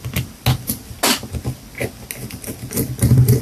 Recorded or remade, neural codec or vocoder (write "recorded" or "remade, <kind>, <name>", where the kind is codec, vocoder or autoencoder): recorded